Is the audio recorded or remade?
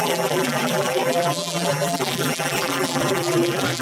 remade